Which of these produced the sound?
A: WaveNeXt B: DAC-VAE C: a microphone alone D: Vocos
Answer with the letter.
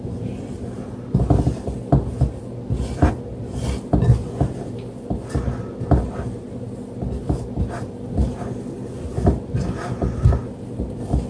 C